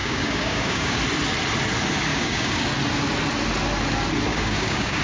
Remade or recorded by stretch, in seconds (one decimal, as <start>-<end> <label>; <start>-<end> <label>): 0.0-1.0 remade; 1.0-2.1 recorded; 2.1-2.6 remade; 2.6-4.3 recorded; 4.3-5.0 remade